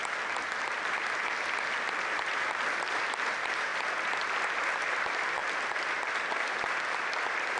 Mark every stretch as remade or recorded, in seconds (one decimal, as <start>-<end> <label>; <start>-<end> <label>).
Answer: 0.0-3.7 remade; 3.7-4.4 recorded; 4.4-5.4 remade; 5.4-6.3 recorded; 6.3-7.6 remade